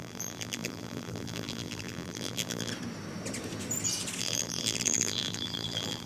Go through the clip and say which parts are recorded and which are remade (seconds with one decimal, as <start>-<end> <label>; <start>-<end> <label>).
0.0-2.7 remade; 2.7-4.2 recorded; 4.2-6.1 remade